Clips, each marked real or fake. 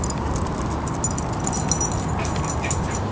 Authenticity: real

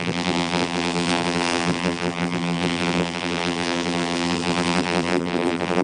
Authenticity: fake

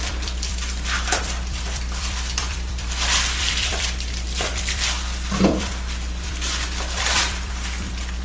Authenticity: fake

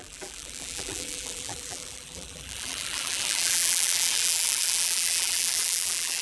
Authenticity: fake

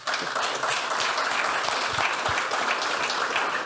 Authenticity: real